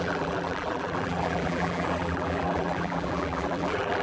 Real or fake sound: fake